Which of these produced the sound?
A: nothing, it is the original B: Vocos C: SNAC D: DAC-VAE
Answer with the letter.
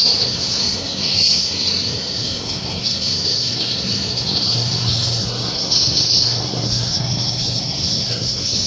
C